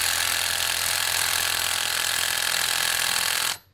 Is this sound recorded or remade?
recorded